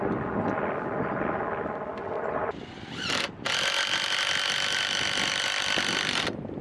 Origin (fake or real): real